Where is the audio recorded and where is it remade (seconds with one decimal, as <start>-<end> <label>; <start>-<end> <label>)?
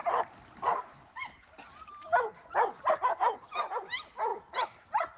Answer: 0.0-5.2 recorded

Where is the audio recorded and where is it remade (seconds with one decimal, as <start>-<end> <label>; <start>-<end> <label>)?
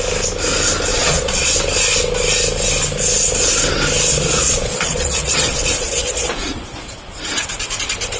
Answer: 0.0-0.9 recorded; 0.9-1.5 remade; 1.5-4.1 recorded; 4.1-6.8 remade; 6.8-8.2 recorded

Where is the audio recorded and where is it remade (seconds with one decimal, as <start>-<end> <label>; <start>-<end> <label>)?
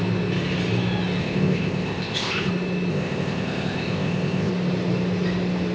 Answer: 0.0-1.2 recorded; 1.2-2.5 remade; 2.5-2.9 recorded; 2.9-4.5 remade; 4.5-5.7 recorded